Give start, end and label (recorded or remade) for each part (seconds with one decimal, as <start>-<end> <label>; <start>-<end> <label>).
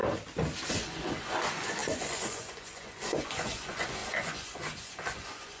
0.0-0.7 recorded; 0.7-5.6 remade